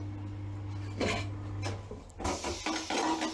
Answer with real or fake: real